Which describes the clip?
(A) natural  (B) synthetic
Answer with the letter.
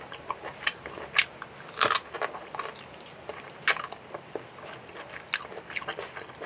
A